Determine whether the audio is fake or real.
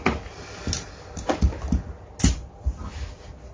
real